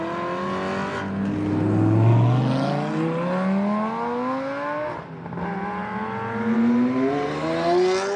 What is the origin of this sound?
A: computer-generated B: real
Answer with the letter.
B